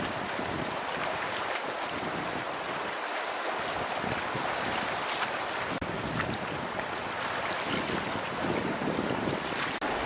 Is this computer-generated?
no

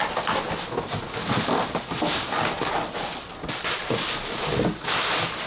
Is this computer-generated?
no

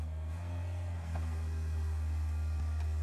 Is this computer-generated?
yes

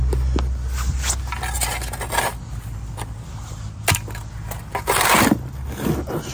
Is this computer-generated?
no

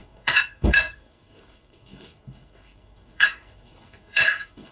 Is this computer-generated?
yes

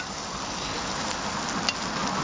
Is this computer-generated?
no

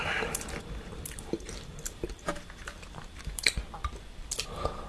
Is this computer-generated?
yes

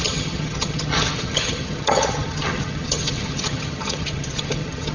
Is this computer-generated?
yes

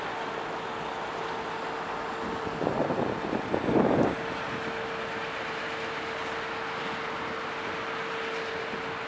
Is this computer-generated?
no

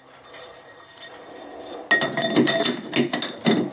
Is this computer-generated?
no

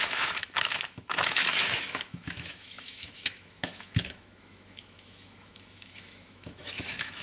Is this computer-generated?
yes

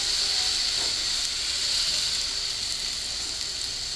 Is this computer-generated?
no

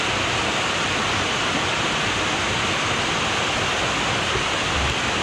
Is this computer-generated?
no